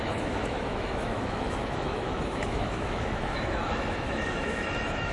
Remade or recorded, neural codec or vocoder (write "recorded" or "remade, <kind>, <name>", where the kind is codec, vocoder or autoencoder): remade, autoencoder, DAC-VAE